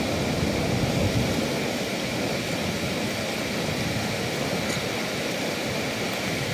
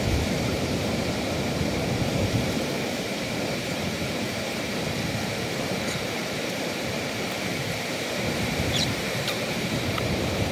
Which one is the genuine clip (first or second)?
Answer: first